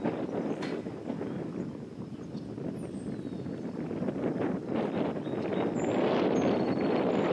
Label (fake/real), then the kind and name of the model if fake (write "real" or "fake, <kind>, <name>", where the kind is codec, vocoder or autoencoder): real